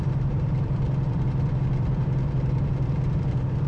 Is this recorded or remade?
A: remade